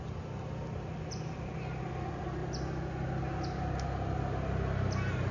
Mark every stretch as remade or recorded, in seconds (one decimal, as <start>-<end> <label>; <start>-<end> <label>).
0.0-5.3 recorded

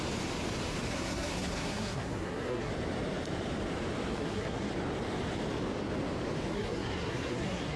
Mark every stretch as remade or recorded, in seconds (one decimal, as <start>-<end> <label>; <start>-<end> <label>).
0.0-0.9 recorded; 0.9-2.7 remade; 2.7-4.1 recorded; 4.1-4.7 remade; 4.7-6.5 recorded; 6.5-7.8 remade

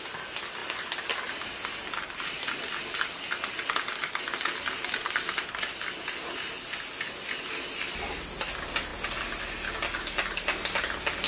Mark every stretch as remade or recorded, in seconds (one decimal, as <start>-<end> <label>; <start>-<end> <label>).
0.0-8.9 recorded; 8.9-9.4 remade; 9.4-11.3 recorded